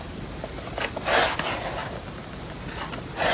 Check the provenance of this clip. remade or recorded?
recorded